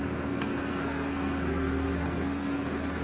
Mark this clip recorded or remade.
remade